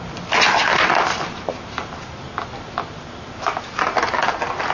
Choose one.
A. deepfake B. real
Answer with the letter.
B